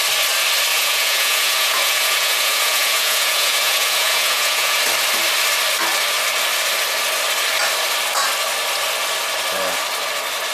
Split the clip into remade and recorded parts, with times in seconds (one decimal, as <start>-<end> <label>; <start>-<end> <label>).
0.0-0.7 recorded; 0.7-4.8 remade; 4.8-10.5 recorded